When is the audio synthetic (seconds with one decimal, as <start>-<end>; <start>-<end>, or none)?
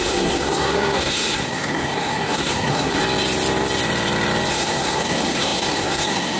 0.0-3.0; 4.5-6.4